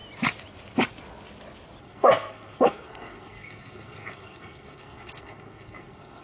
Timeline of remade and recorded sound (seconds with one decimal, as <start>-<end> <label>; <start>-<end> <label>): 0.0-1.8 recorded; 1.8-6.2 remade